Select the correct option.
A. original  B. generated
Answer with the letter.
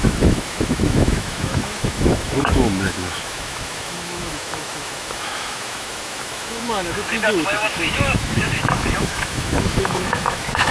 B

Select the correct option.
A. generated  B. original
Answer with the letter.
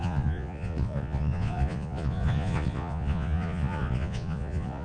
A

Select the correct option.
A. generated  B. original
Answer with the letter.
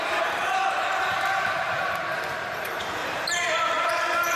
A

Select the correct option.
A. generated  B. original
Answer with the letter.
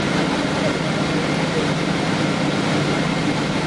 B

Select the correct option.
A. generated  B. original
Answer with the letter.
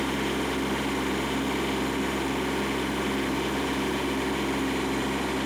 B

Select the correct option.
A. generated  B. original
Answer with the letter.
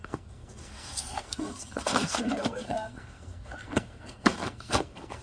A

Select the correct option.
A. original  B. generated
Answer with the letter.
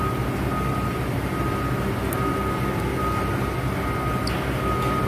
A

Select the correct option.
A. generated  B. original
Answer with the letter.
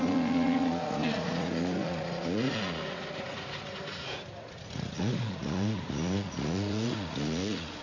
A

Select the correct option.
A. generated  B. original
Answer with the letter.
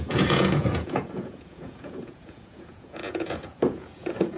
A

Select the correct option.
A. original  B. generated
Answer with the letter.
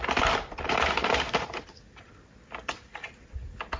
A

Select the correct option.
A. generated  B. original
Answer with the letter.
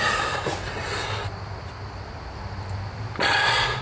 B